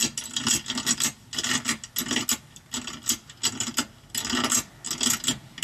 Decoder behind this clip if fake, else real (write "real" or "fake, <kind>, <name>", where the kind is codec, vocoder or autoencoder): real